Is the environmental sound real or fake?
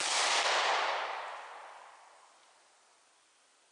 real